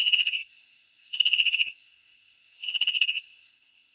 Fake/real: fake